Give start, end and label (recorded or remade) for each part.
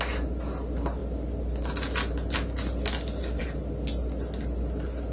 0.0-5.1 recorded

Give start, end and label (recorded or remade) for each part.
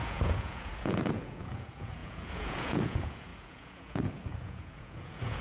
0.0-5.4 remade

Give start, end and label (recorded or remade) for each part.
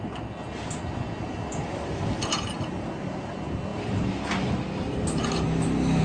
0.0-6.0 recorded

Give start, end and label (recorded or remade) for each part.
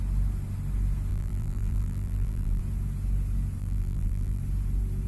0.0-1.1 recorded; 1.1-2.6 remade; 2.6-3.6 recorded; 3.6-4.4 remade; 4.4-5.1 recorded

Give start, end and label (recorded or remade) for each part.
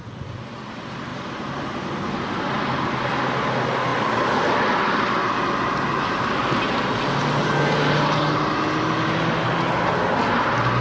0.0-10.8 recorded